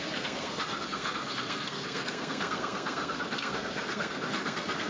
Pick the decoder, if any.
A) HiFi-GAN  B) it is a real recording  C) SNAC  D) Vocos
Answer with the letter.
C